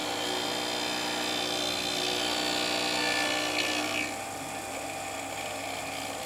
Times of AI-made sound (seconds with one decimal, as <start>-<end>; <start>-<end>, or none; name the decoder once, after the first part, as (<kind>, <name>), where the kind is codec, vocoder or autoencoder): none